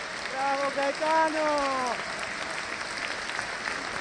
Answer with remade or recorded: recorded